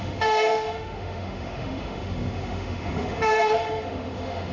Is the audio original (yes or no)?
no